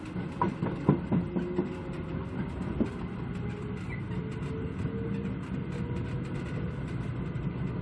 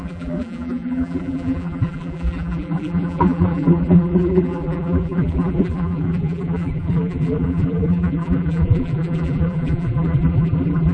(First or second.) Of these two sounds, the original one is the first